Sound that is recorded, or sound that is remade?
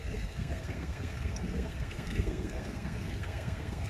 remade